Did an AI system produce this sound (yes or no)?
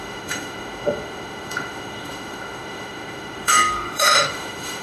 yes